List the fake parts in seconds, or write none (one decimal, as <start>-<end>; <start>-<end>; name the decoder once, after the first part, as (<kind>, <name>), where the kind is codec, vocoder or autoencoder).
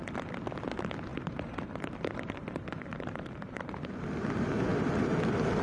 1.1-4.1 (vocoder, BigVGAN v2)